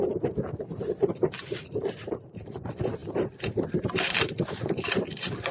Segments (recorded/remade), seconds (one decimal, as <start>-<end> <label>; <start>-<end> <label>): 0.0-5.5 remade